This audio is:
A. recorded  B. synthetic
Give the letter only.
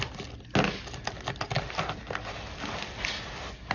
A